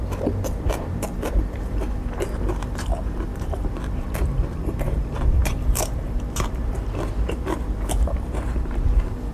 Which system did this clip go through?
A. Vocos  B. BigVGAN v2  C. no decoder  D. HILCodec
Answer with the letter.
B